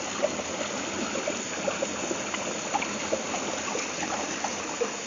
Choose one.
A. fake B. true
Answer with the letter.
B